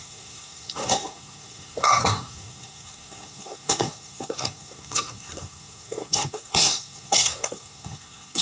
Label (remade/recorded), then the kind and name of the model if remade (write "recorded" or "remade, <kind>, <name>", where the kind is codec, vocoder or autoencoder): remade, codec, SNAC